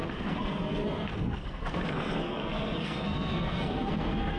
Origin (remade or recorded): remade